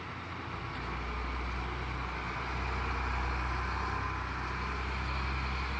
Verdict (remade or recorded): recorded